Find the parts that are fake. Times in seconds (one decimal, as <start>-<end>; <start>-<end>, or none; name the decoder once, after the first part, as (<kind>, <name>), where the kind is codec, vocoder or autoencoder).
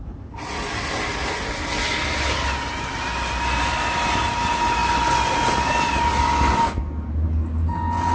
none